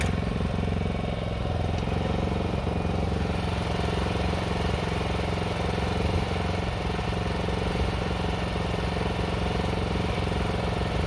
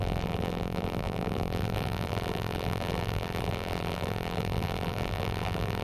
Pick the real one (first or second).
first